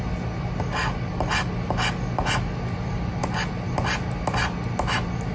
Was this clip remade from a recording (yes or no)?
no